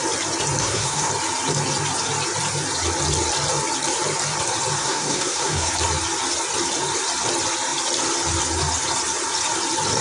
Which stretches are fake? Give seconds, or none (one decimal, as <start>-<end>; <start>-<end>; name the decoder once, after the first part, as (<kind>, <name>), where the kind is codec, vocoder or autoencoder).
0.6-1.1 (codec, SNAC); 4.8-5.7